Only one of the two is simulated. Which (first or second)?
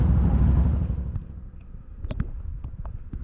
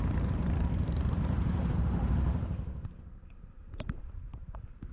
second